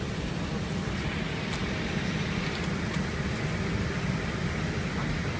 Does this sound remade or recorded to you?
recorded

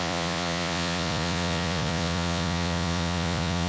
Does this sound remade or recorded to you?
remade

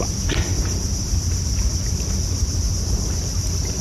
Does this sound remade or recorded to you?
recorded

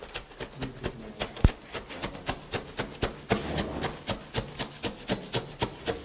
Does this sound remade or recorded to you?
recorded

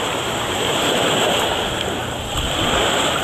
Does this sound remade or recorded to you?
recorded